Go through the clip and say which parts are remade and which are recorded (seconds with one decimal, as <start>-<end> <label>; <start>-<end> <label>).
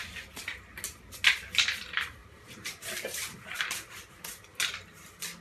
0.0-2.2 recorded; 2.2-4.3 remade; 4.3-5.4 recorded